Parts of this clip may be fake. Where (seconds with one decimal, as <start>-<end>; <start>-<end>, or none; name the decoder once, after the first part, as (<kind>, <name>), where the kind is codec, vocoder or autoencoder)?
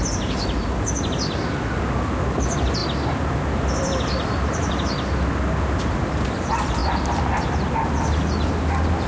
none